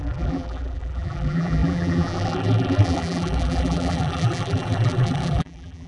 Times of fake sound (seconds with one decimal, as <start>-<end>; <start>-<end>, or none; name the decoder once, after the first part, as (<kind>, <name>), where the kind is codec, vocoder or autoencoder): 0.0-5.9 (vocoder, BigVGAN v2)